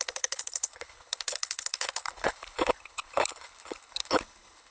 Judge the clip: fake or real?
fake